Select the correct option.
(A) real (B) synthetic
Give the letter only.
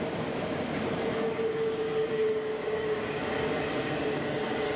B